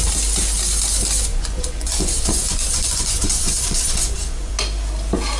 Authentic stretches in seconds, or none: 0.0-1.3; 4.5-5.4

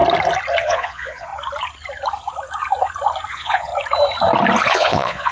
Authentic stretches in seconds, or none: 0.0-0.6; 1.3-3.3; 3.7-4.7